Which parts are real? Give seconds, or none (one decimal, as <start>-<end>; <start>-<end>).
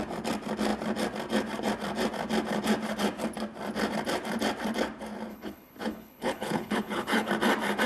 0.0-5.3; 7.3-7.9